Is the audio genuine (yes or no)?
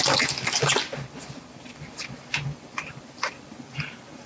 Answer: no